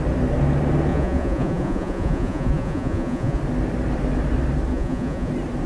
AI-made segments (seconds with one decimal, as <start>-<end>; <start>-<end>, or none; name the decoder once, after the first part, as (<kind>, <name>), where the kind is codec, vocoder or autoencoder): 0.9-3.4 (vocoder, Vocos); 4.7-5.3